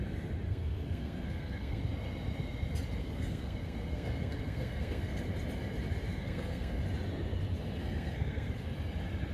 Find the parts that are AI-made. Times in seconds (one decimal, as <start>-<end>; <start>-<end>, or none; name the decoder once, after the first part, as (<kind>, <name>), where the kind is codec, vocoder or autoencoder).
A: 0.5-1.8 (codec, SNAC); 3.0-5.2; 6.1-6.8; 7.8-8.5